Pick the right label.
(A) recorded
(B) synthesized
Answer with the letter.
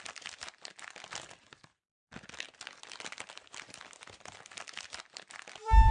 A